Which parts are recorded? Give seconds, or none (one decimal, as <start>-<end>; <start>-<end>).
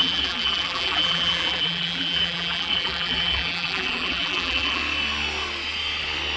4.8-6.4